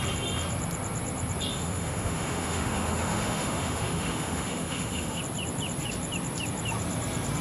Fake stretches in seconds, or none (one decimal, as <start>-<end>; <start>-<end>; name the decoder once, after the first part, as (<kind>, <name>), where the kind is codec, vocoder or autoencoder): 1.5-5.2 (autoencoder, DAC-VAE)

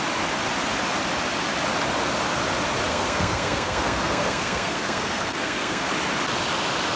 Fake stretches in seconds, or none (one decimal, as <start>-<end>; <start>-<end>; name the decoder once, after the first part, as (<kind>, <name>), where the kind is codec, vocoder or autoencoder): 2.9-5.9 (codec, SNAC)

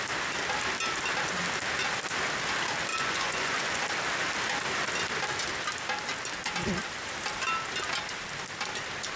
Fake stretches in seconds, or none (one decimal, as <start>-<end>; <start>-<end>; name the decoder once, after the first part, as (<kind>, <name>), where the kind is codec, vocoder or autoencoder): 2.9-3.8 (vocoder, Vocos)

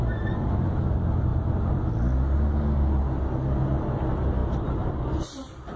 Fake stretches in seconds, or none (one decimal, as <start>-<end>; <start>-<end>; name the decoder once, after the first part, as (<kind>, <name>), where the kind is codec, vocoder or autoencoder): none

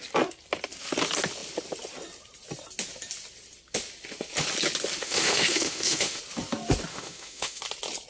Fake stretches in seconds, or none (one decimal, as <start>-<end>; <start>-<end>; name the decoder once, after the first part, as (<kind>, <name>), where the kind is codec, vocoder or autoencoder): 5.0-6.2 (autoencoder, DAC-VAE); 6.9-7.6

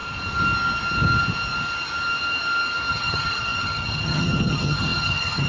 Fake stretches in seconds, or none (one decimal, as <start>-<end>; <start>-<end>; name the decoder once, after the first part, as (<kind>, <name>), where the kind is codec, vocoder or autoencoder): 2.9-5.5 (vocoder, HiFi-GAN)